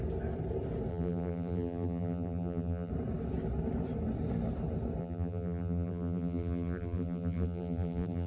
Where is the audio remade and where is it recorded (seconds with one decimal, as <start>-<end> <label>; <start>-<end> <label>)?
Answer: 0.0-0.9 recorded; 0.9-2.9 remade; 2.9-5.0 recorded; 5.0-8.3 remade